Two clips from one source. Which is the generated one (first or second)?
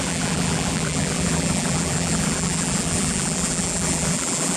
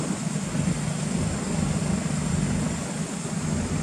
first